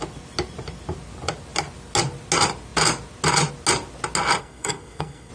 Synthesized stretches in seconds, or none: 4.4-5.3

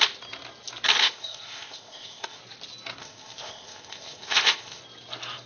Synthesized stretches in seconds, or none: 1.0-2.4; 3.0-4.8